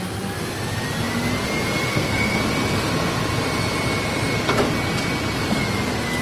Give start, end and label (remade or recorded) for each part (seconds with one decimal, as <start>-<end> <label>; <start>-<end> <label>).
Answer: 0.0-1.9 recorded; 1.9-2.4 remade; 2.4-6.2 recorded